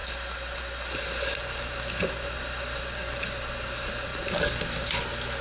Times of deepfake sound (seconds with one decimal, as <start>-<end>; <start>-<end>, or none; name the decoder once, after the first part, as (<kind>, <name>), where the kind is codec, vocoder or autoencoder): none

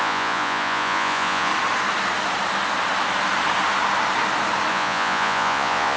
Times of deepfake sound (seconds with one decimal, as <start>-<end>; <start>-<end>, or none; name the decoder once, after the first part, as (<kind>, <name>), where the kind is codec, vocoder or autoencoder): 0.0-1.5 (vocoder, Vocos); 4.7-6.0

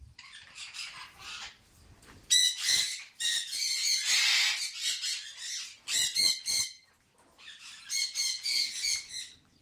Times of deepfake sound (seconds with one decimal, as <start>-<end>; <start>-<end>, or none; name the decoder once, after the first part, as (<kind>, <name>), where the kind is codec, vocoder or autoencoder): 8.2-8.7 (vocoder, Vocos)